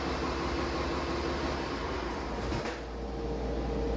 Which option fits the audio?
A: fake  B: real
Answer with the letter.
B